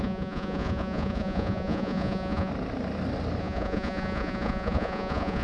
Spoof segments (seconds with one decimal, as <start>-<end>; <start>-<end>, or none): 0.0-2.5; 3.4-5.4